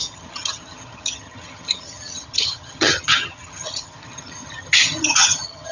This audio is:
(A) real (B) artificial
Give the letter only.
B